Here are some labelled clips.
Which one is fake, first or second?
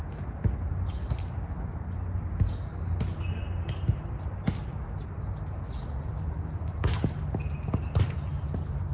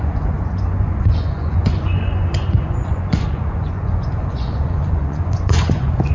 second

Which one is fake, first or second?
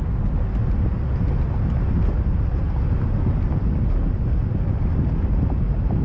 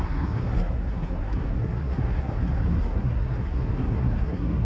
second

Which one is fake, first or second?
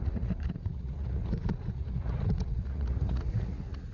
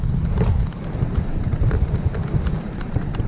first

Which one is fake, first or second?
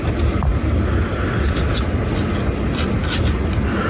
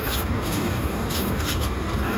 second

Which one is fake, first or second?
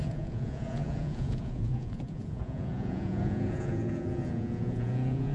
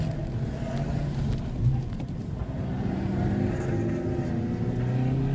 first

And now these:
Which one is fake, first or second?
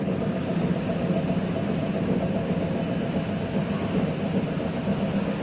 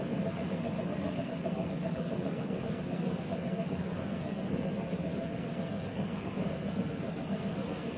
second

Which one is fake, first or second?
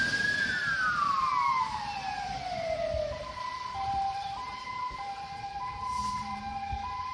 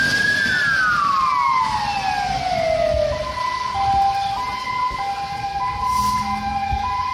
first